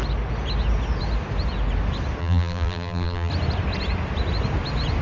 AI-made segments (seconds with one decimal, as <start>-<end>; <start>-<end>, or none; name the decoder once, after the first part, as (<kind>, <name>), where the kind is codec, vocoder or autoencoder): 2.2-3.3 (vocoder, BigVGAN v2)